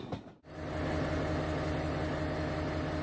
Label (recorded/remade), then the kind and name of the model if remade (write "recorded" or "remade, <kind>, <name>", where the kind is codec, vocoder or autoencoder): recorded